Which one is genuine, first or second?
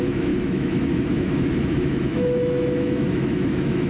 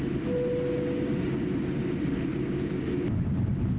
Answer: second